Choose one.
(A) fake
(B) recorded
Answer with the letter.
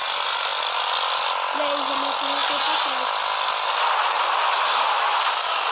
B